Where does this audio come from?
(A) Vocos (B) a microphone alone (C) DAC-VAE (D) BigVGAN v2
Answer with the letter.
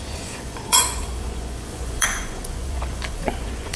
A